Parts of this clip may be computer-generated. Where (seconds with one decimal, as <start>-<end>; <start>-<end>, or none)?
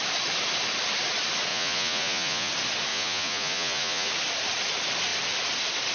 1.5-2.5; 2.9-4.1